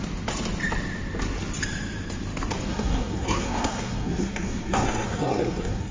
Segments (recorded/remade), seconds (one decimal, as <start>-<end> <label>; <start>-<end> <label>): 0.0-2.7 recorded; 2.7-5.9 remade